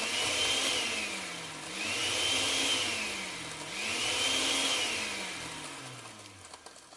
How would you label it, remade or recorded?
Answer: recorded